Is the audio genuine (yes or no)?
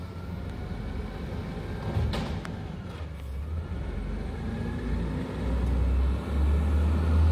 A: yes